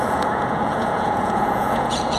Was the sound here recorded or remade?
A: remade